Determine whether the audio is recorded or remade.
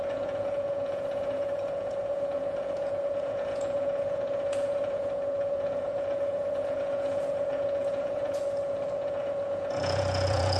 remade